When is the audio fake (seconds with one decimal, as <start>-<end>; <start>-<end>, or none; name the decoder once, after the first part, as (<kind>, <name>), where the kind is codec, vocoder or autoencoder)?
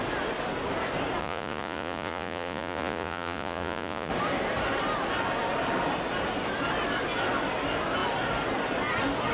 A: 1.2-4.1 (vocoder, Vocos)